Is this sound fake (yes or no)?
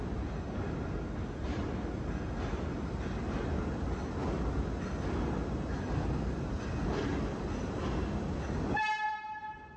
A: no